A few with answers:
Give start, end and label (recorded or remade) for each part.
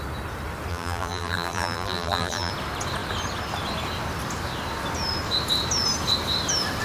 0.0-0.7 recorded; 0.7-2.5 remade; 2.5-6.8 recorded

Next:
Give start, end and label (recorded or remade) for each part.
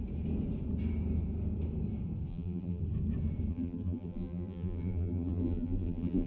0.0-2.3 recorded; 2.3-2.8 remade; 2.8-3.5 recorded; 3.5-6.3 remade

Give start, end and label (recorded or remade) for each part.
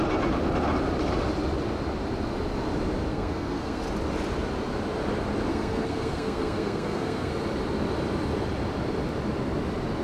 0.0-3.1 recorded; 3.1-3.8 remade; 3.8-5.5 recorded; 5.5-7.3 remade; 7.3-10.0 recorded